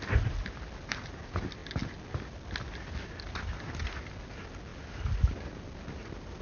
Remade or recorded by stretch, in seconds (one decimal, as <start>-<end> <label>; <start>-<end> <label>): 0.0-6.4 recorded